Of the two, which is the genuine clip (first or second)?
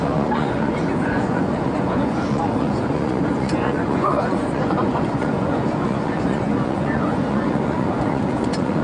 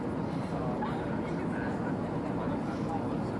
second